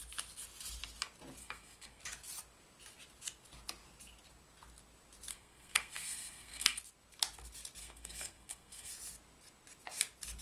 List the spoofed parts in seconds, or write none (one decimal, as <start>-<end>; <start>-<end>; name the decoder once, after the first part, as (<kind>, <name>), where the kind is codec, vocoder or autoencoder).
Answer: 1.4-2.0 (codec, SNAC); 5.3-6.8; 7.8-8.9